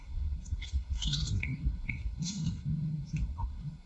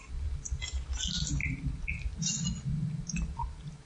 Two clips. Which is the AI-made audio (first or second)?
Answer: first